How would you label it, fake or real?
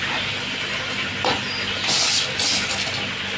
real